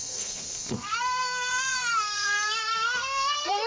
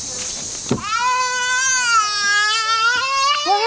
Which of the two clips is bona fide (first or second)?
second